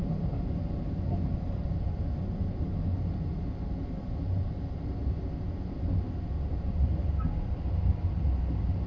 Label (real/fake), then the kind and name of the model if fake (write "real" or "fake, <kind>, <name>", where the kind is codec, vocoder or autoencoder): real